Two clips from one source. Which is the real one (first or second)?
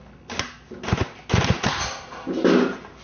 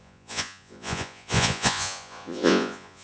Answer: first